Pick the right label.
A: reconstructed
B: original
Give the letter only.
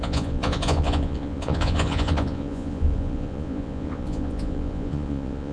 A